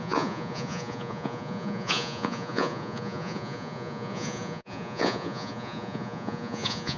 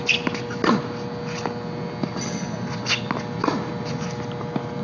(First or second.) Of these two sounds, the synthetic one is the first